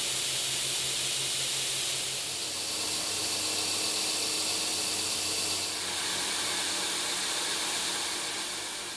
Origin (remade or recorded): recorded